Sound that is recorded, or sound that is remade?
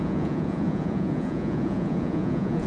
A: remade